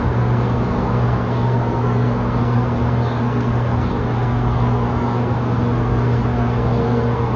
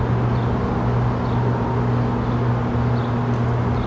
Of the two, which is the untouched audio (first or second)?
second